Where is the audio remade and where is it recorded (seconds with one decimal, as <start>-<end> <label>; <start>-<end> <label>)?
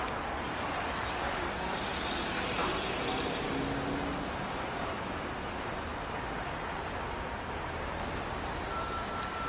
0.0-9.5 recorded